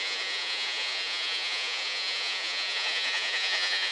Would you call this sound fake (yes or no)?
yes